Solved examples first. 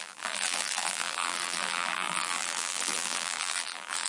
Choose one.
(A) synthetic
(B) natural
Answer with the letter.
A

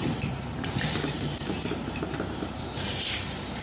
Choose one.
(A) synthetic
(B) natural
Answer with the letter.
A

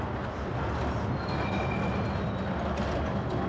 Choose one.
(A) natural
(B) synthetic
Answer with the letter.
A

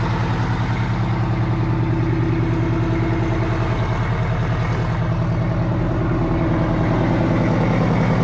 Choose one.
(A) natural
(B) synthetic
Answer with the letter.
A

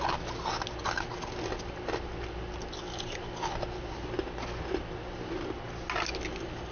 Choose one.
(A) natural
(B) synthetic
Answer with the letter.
A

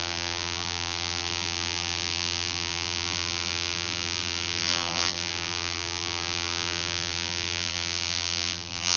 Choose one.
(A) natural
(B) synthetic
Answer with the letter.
B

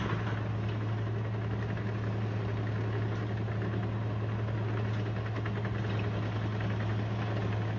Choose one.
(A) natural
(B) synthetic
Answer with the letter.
A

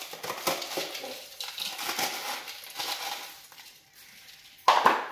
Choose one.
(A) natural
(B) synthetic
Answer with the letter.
A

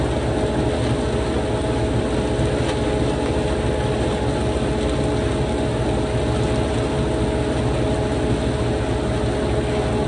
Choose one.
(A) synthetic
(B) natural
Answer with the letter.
B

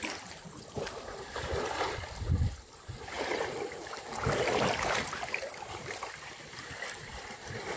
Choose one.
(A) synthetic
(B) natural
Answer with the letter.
A